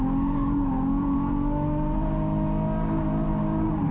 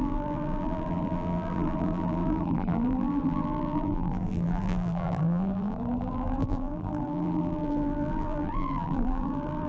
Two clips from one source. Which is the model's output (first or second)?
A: second